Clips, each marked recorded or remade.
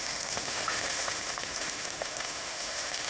remade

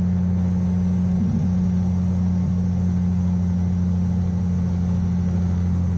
recorded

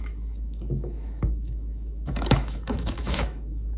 remade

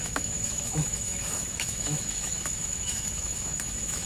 remade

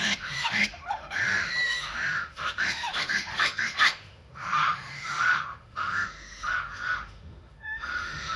remade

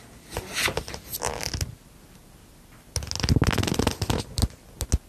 recorded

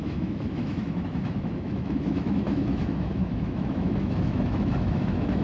remade